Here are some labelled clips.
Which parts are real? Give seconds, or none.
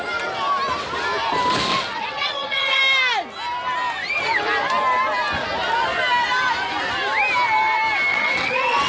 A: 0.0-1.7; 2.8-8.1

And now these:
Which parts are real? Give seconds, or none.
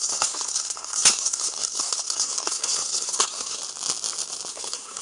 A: 3.6-4.5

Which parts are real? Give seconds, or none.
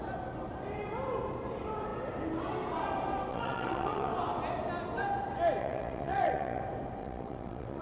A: 0.0-3.3; 4.1-5.6; 6.6-7.0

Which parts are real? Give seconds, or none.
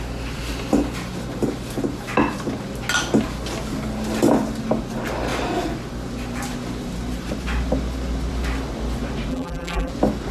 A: 0.0-9.3; 9.9-10.3